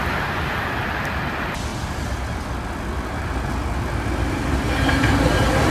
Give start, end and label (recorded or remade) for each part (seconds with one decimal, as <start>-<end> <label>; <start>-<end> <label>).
0.0-5.7 recorded